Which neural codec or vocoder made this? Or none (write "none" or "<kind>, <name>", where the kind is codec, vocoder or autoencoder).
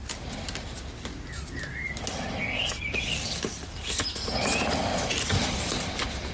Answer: none